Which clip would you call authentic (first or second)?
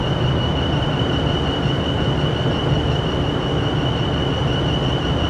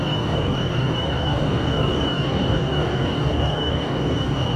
first